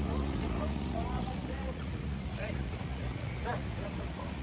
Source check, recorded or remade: remade